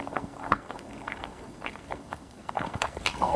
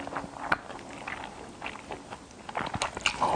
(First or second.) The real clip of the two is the second